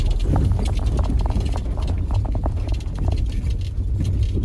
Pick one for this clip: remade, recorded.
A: recorded